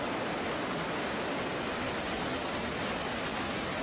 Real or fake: real